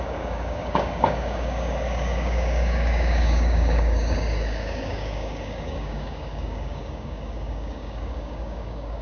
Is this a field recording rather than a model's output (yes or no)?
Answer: no